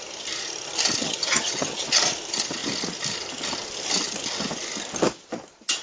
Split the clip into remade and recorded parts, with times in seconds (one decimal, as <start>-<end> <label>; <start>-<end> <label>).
0.0-1.0 recorded; 1.0-2.0 remade; 2.0-5.8 recorded